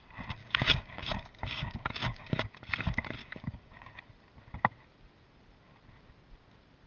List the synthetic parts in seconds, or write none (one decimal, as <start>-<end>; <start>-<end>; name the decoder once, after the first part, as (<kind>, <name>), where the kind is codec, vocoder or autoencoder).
0.4-2.4 (codec, DAC); 3.2-4.0